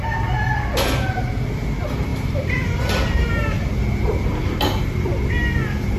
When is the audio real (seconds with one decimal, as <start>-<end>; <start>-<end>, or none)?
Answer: 0.0-6.0